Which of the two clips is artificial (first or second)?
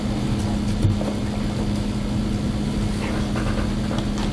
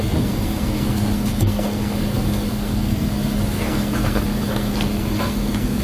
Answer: second